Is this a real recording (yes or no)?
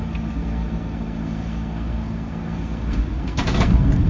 no